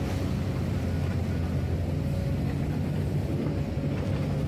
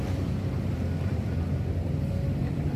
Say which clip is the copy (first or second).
second